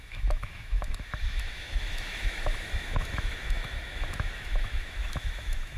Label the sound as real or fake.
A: fake